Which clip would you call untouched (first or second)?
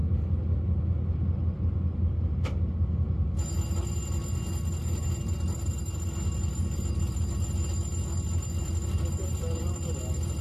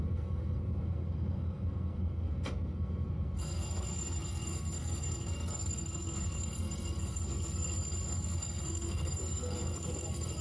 first